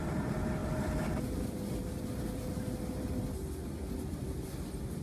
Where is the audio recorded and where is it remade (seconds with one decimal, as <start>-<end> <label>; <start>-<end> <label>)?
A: 0.0-0.6 recorded; 0.6-1.2 remade; 1.2-5.0 recorded